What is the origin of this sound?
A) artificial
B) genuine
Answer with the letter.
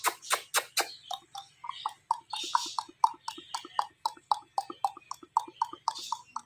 B